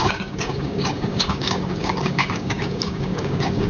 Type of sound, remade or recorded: remade